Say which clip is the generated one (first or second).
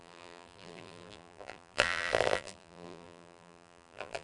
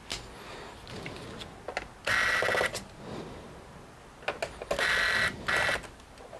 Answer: first